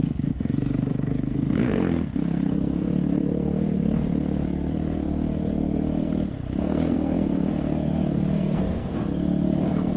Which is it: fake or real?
fake